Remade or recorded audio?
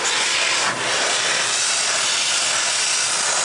recorded